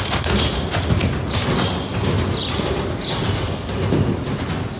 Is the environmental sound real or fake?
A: real